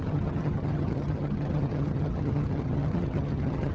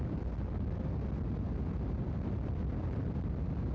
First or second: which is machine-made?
first